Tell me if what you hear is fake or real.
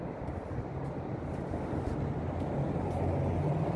real